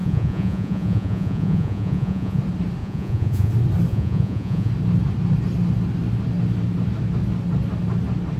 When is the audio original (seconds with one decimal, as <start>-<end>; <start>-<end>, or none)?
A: 2.4-2.8; 3.5-3.9; 4.7-8.4